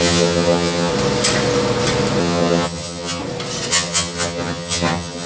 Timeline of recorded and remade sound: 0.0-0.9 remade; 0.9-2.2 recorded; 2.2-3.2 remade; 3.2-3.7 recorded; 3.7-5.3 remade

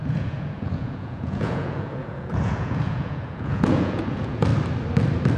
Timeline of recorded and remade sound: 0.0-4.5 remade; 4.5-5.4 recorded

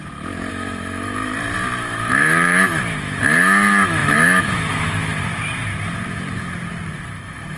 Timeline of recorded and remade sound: 0.0-0.5 recorded; 0.5-1.3 remade; 1.3-1.8 recorded; 1.8-5.3 remade; 5.3-6.9 recorded; 6.9-7.6 remade

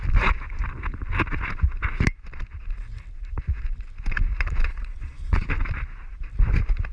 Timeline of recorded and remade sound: 0.0-4.7 recorded; 4.7-5.5 remade; 5.5-6.9 recorded

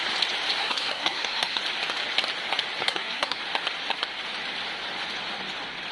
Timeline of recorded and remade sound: 0.0-0.6 recorded; 0.6-1.6 remade; 1.6-2.8 recorded; 2.8-3.4 remade; 3.4-5.9 recorded

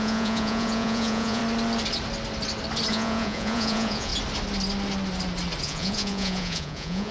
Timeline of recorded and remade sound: 0.0-1.4 remade; 1.4-2.9 recorded; 2.9-4.1 remade; 4.1-5.6 recorded; 5.6-7.1 remade